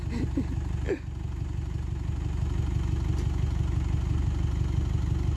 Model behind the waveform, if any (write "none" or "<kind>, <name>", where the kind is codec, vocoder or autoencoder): none